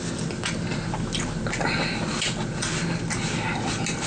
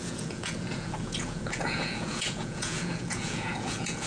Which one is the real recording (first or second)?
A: first